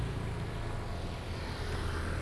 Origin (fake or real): real